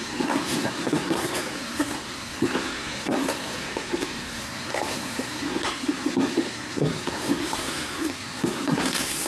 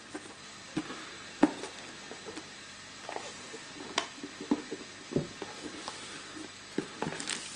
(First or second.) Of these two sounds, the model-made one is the first